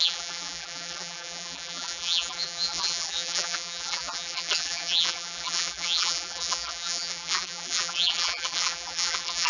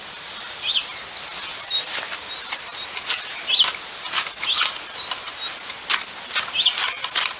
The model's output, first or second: first